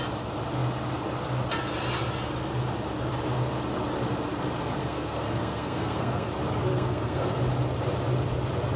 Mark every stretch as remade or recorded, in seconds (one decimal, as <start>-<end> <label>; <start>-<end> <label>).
0.0-4.8 recorded; 4.8-6.3 remade; 6.3-6.7 recorded; 6.7-7.4 remade; 7.4-8.8 recorded